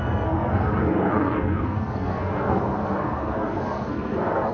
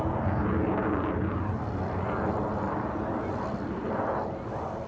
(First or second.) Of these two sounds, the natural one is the second